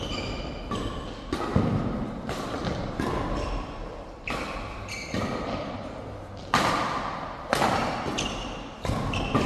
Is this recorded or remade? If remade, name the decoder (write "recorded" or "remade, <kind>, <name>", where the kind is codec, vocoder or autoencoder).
recorded